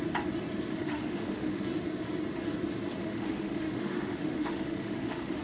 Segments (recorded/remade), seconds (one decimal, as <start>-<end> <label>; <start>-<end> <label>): 0.0-0.7 recorded; 0.7-1.6 remade; 1.6-3.0 recorded; 3.0-5.4 remade